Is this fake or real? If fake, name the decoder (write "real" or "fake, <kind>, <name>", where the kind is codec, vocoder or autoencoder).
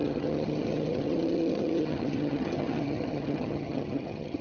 fake, vocoder, HiFi-GAN